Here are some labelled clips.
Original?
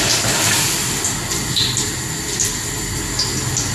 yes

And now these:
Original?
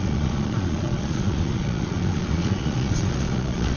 no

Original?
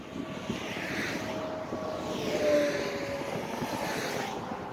yes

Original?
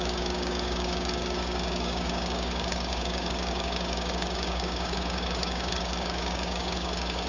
no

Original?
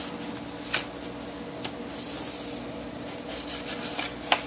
yes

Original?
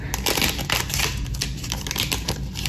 yes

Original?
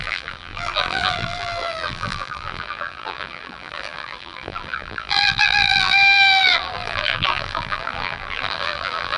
no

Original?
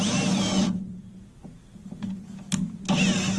yes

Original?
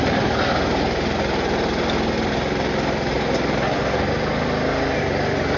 yes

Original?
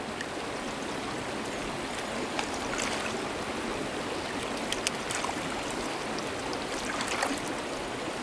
yes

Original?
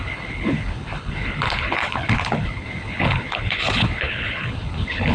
no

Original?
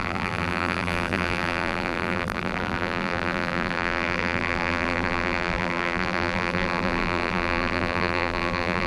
no